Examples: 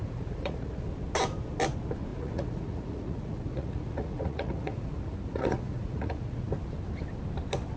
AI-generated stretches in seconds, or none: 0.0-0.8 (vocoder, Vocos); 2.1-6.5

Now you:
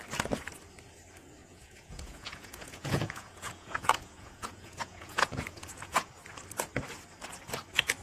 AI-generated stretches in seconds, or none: 1.4-6.1 (vocoder, Vocos)

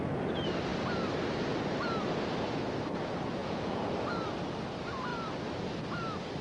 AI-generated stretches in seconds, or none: 3.4-4.0 (vocoder, Vocos)

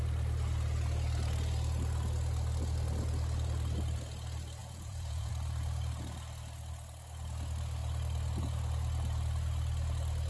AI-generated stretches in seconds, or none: 4.6-5.3 (vocoder, Vocos)

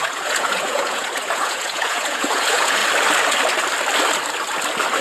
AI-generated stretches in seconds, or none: 0.0-2.8 (vocoder, Vocos)